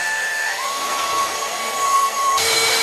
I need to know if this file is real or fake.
fake